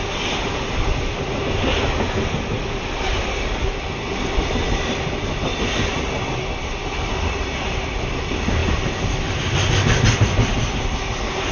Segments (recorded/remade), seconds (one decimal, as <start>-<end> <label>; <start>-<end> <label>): 0.0-11.5 recorded